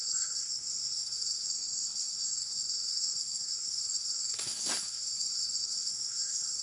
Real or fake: fake